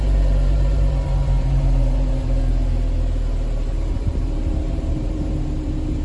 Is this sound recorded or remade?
remade